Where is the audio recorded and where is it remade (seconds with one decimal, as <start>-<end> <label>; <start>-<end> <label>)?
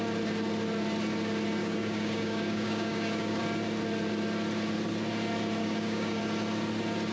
0.0-1.6 recorded; 1.6-3.4 remade; 3.4-5.6 recorded; 5.6-6.2 remade; 6.2-7.1 recorded